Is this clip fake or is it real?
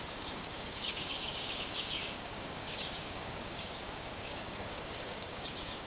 fake